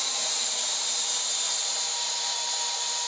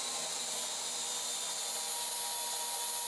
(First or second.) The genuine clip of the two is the second